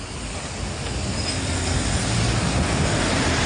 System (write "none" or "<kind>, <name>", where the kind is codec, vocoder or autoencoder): none